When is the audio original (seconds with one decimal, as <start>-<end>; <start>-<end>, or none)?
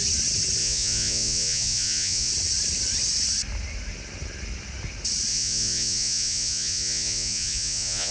0.0-0.6; 2.3-5.3